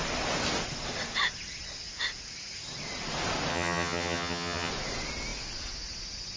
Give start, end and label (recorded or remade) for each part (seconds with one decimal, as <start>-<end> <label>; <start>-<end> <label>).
0.0-3.5 recorded; 3.5-4.7 remade; 4.7-6.4 recorded